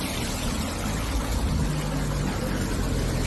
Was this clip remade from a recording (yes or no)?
no